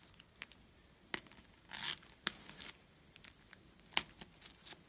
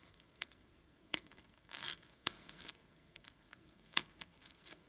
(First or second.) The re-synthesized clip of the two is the second